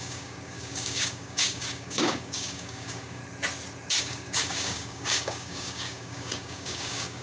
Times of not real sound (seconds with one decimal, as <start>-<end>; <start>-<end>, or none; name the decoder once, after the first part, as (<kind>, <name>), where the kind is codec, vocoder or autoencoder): 0.0-3.2 (codec, DAC); 4.0-7.2